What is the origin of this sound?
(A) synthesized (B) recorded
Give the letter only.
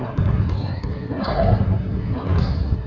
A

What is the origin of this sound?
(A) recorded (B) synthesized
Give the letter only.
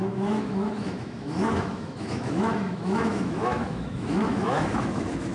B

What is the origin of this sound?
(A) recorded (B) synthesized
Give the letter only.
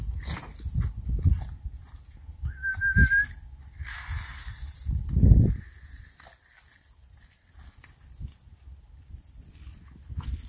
A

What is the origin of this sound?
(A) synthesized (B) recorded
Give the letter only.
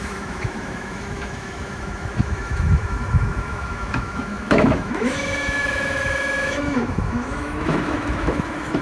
A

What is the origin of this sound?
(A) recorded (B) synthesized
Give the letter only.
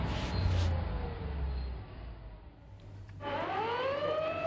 A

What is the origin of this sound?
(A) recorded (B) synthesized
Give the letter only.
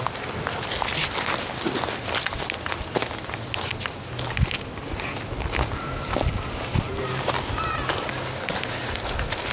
A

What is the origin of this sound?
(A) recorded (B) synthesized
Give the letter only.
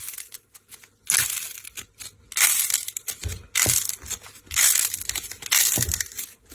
A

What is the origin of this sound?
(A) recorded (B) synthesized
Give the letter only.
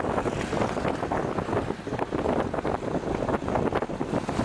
A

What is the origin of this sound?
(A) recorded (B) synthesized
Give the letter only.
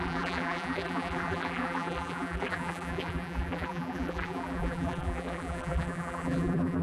B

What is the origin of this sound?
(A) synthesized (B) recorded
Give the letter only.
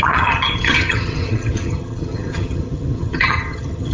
A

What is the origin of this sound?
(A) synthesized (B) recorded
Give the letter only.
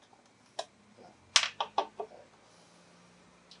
B